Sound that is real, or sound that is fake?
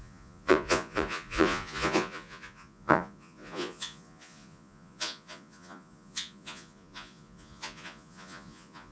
fake